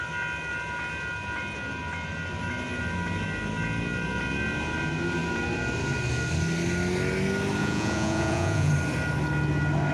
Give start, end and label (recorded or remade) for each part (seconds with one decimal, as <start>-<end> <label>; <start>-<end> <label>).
0.0-7.6 recorded; 7.6-8.7 remade; 8.7-9.9 recorded